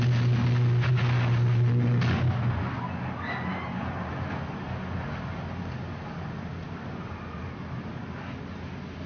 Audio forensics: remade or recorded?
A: recorded